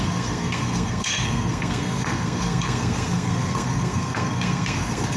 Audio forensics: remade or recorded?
remade